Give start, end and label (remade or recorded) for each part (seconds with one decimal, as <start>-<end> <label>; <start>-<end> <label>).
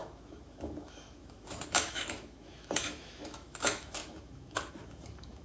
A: 0.0-5.4 remade